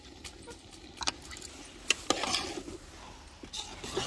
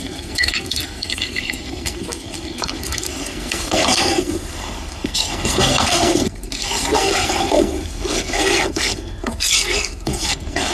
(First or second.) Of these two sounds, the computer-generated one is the second